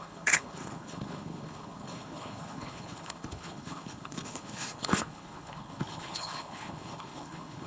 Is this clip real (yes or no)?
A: no